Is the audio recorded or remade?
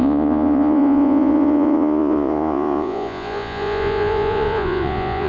remade